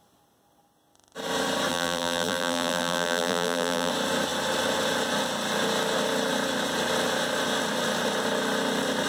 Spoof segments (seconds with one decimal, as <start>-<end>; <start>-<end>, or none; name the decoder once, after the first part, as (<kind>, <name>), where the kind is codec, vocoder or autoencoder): 1.7-3.9 (vocoder, BigVGAN v2)